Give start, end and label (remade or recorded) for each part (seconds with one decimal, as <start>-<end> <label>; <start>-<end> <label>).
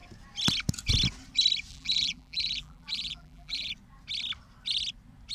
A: 0.0-1.7 recorded; 1.7-3.7 remade; 3.7-5.3 recorded